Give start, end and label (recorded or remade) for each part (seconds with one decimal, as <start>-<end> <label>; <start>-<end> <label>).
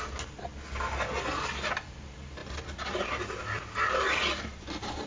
0.0-5.1 recorded